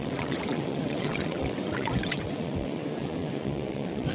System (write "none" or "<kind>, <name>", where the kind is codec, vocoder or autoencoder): vocoder, WaveNeXt